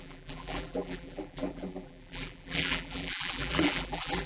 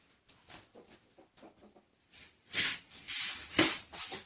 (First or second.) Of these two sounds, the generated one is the first